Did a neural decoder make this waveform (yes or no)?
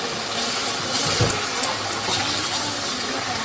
no